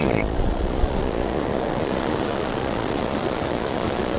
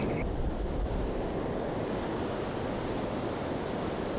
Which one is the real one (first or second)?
second